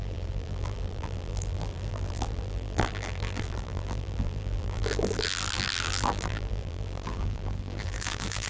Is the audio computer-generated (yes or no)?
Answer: yes